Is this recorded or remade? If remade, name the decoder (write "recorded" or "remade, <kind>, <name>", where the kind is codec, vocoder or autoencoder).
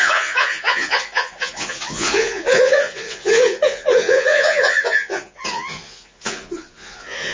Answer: remade, vocoder, Vocos